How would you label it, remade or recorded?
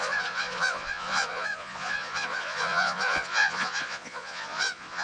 remade